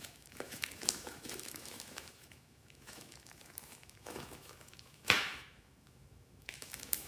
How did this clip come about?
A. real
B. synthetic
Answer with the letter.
B